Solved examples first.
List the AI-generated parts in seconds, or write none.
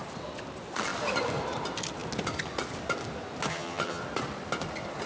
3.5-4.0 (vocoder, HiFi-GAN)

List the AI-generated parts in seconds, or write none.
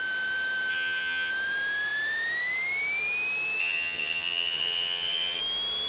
0.7-1.3 (vocoder, HiFi-GAN); 3.6-5.4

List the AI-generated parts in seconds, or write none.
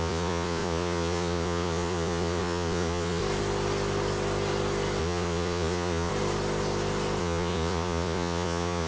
0.0-3.2 (vocoder, Vocos); 5.0-6.1; 7.2-8.9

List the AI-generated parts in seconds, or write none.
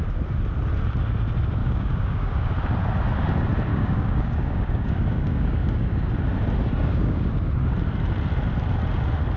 1.6-2.5 (codec, DAC); 3.7-6.1; 6.8-7.3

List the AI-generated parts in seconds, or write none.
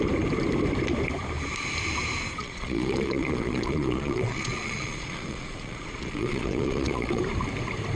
2.4-7.2 (vocoder, Vocos)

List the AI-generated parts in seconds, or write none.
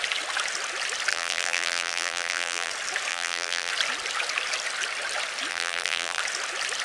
1.1-2.7 (vocoder, BigVGAN v2); 3.1-3.7; 5.5-6.2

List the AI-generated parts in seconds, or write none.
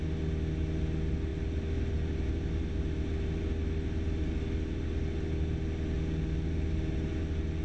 none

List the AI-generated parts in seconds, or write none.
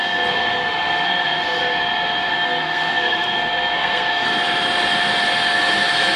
0.0-1.6 (codec, SNAC); 2.3-4.3